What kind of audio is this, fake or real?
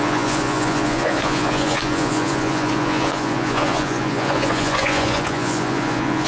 fake